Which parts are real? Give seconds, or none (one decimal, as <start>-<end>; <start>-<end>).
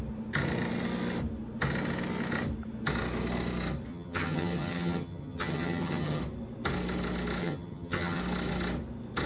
0.0-3.9; 6.2-7.4; 8.2-9.3